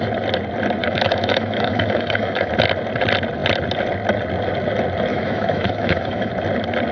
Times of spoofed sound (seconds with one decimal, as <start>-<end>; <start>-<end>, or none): 0.8-2.5; 5.1-6.3

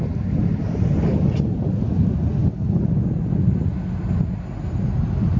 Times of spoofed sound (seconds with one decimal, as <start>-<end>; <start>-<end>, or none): 0.4-1.2